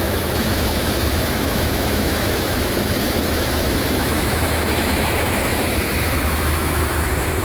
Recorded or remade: remade